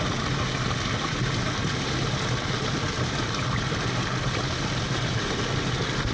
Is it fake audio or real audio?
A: real